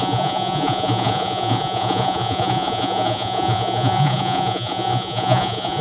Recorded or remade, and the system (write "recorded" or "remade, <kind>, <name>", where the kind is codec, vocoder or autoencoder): remade, vocoder, Vocos